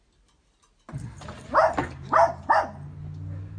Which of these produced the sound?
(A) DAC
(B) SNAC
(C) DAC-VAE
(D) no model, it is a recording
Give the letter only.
D